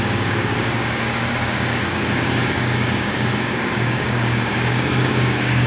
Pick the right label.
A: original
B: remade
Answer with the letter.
B